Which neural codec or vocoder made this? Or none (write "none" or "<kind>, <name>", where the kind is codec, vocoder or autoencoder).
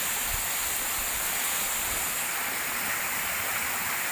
none